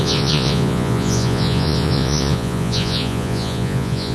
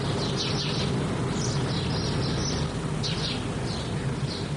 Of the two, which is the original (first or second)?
second